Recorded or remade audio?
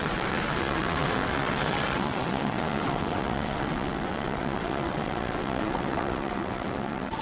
remade